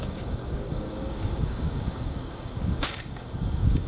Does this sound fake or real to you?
fake